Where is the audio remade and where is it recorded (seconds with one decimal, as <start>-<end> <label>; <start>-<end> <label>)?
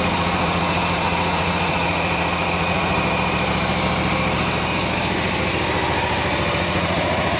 0.0-2.9 remade; 2.9-6.6 recorded; 6.6-7.4 remade